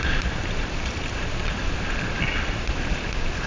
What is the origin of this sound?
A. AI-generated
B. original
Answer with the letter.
B